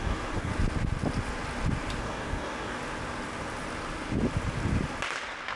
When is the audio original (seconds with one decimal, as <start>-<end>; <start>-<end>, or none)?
0.5-2.0; 2.8-5.6